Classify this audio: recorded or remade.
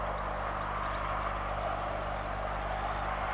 recorded